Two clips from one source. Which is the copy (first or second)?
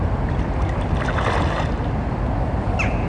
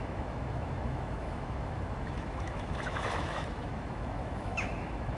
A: second